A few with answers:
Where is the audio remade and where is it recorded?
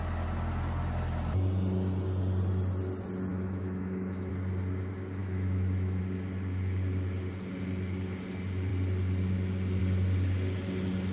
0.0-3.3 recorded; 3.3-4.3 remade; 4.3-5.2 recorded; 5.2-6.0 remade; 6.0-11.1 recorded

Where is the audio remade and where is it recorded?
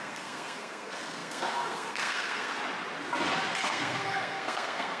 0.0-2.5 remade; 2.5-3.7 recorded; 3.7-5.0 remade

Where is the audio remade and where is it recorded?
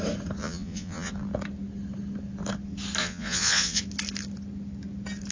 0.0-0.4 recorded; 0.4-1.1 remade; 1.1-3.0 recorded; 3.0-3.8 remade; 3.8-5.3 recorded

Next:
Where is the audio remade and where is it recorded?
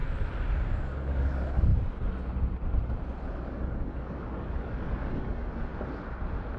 0.0-0.8 recorded; 0.8-1.7 remade; 1.7-3.4 recorded; 3.4-5.7 remade; 5.7-6.6 recorded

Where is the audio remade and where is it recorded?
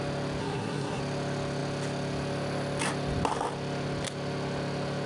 0.0-0.4 recorded; 0.4-1.0 remade; 1.0-5.1 recorded